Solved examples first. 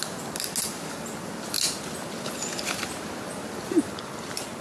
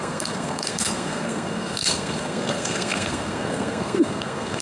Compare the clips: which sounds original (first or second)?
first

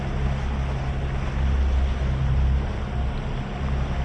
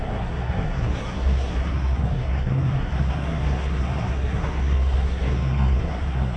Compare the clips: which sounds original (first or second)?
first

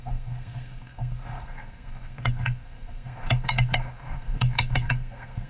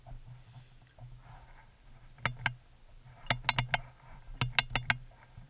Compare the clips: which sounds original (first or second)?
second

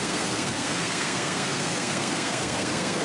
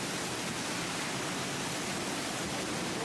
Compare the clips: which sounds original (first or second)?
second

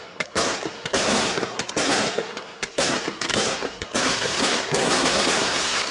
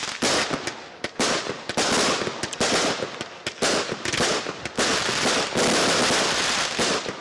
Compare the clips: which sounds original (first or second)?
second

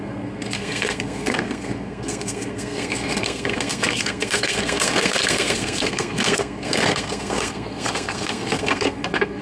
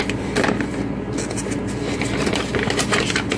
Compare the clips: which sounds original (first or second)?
second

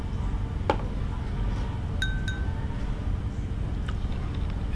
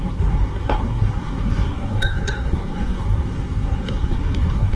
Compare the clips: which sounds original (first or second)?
first